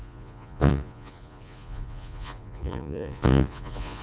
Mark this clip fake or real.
fake